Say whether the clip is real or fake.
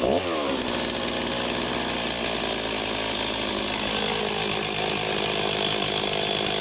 real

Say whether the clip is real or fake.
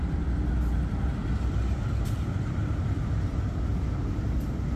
fake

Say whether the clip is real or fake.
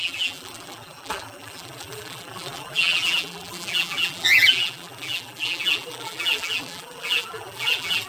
fake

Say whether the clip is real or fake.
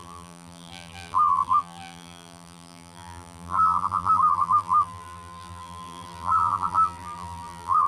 fake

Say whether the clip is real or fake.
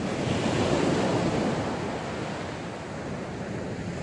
real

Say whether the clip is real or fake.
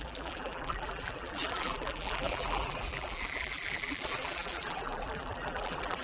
fake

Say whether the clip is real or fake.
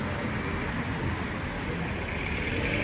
real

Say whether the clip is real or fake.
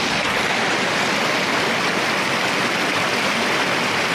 real